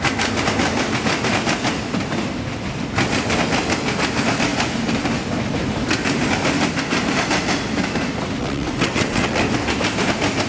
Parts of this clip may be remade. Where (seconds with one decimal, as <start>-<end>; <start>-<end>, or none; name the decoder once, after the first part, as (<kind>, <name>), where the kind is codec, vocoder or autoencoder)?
8.4-9.4 (vocoder, WaveNeXt)